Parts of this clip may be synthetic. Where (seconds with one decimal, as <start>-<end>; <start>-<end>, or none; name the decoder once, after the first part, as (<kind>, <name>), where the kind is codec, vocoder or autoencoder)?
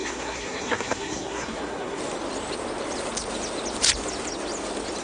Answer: 0.0-2.0 (codec, SNAC)